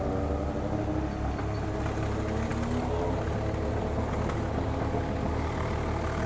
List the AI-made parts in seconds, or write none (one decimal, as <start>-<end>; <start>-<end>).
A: none